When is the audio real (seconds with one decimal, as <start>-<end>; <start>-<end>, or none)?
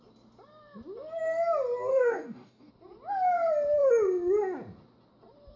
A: 0.0-1.9; 2.7-5.6